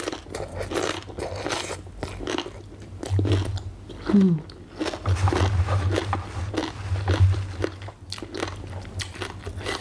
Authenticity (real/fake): real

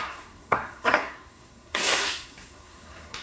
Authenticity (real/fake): fake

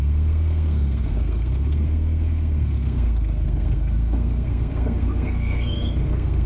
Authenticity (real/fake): fake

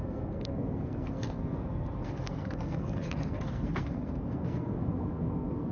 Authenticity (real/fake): fake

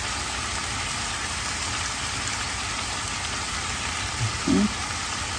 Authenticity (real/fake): real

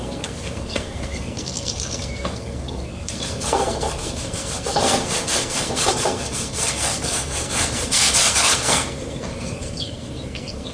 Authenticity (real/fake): fake